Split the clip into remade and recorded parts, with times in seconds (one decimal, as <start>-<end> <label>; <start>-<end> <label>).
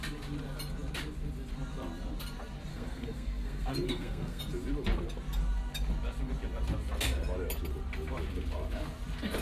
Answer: 0.0-2.7 recorded; 2.7-4.4 remade; 4.4-9.4 recorded